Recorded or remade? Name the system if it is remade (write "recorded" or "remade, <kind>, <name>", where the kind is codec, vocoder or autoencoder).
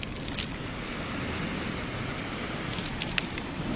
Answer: recorded